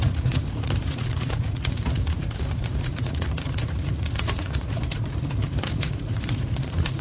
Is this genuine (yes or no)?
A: no